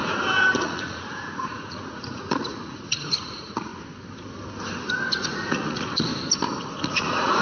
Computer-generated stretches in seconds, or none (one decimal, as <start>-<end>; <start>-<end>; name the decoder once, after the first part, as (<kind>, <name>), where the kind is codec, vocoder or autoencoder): 0.6-3.7 (vocoder, Vocos); 5.2-6.1; 6.8-7.4